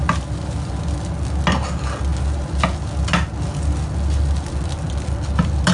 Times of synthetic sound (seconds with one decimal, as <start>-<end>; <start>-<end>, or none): none

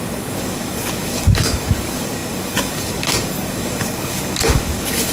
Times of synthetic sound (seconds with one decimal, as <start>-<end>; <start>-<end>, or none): 0.0-5.1

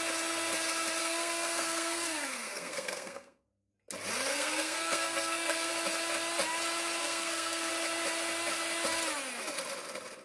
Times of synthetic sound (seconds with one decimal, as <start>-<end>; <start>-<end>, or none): 1.0-3.7; 4.3-5.7; 7.0-7.7